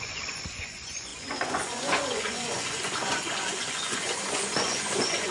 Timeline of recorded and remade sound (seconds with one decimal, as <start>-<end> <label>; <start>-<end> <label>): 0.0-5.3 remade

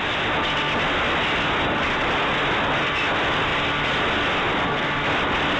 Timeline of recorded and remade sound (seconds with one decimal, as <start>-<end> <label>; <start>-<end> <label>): 0.0-5.6 recorded

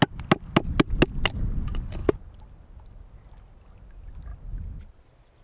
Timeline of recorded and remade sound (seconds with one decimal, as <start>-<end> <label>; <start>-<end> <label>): 0.0-5.4 recorded

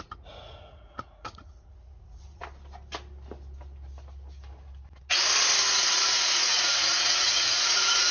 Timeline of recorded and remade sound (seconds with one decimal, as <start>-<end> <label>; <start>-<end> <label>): 0.0-2.4 remade; 2.4-5.9 recorded; 5.9-8.1 remade

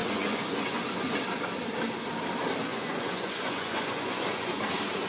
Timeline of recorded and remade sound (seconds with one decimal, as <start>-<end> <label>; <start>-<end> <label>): 0.0-0.8 remade; 0.8-2.7 recorded; 2.7-4.6 remade; 4.6-5.1 recorded

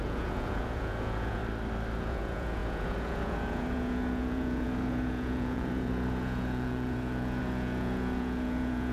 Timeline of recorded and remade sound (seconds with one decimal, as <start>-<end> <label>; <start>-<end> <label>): 0.0-1.4 remade; 1.4-2.0 recorded; 2.0-8.9 remade